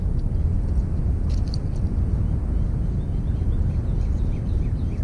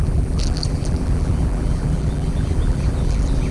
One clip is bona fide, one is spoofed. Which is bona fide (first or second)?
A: first